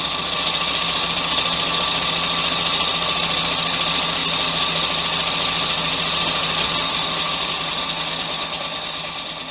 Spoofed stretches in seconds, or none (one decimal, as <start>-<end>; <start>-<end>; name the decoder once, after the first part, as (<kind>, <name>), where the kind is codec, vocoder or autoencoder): none